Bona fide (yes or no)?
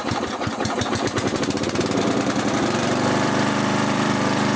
no